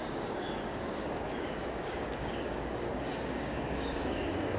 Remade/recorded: remade